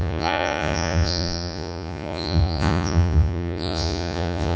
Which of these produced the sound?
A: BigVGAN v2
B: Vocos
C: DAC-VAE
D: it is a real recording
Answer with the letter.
B